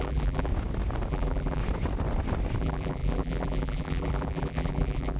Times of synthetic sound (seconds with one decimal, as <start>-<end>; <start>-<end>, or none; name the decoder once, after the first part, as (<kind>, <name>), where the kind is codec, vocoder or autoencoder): 0.0-0.5 (vocoder, BigVGAN v2); 1.1-1.6; 2.6-5.2